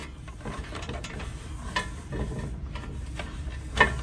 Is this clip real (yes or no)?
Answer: yes